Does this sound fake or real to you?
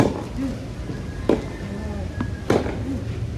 real